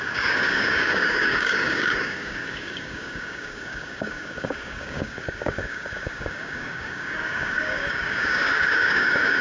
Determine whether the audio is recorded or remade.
remade